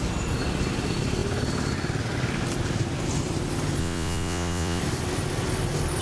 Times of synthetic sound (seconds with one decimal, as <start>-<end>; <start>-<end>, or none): 3.8-4.8